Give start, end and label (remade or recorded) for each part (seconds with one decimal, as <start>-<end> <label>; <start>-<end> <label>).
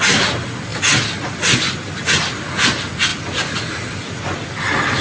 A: 0.0-5.0 recorded